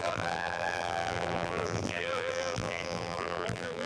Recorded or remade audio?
remade